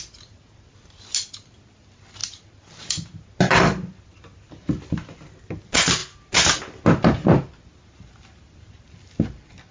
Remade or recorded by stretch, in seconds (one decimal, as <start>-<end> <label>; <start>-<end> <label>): 0.0-9.7 recorded